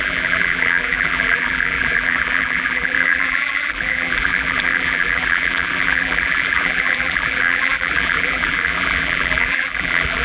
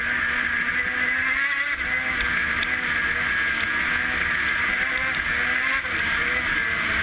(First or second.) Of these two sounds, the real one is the second